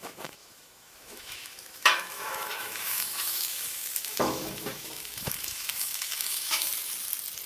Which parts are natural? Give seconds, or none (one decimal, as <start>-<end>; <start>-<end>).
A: 6.7-7.5